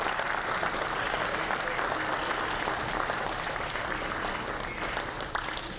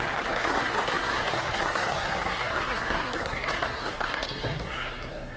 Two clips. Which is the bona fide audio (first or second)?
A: first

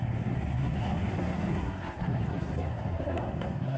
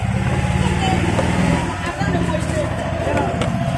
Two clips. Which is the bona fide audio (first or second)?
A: second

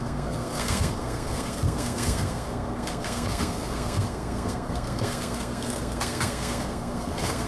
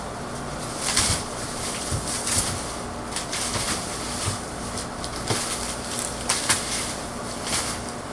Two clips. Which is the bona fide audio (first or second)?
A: second